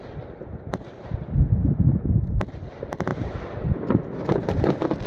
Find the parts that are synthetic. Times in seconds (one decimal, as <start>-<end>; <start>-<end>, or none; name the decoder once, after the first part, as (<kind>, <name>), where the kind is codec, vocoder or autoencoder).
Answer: 1.6-2.3 (autoencoder, DAC-VAE)